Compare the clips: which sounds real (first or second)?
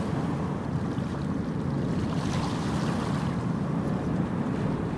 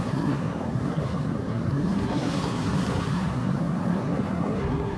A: first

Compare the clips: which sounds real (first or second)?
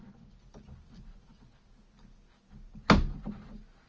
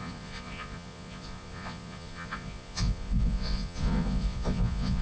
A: first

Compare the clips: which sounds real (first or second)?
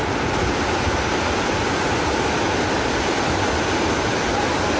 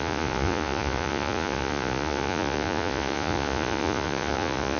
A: first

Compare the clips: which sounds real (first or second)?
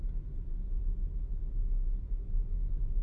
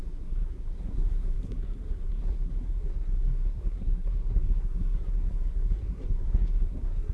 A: first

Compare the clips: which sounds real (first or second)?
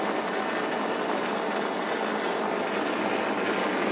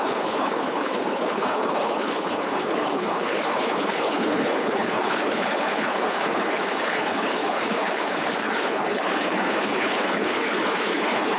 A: first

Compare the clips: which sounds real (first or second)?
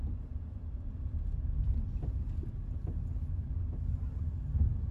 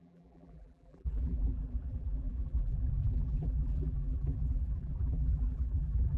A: first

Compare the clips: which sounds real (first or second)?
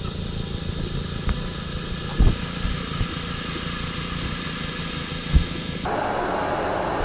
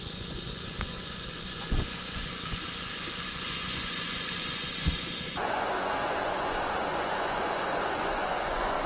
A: first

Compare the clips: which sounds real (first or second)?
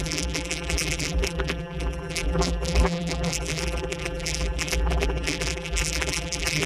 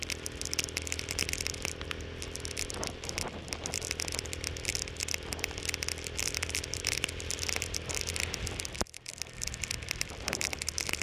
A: second